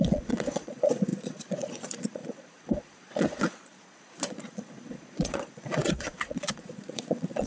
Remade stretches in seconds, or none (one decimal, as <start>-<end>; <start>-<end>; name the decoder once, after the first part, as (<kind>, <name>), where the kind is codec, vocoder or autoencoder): 0.0-7.5 (vocoder, Vocos)